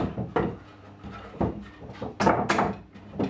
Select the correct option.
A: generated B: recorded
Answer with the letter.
B